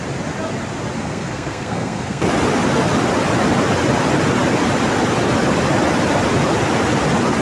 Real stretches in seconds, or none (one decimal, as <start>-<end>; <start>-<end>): 0.0-1.0; 2.2-7.4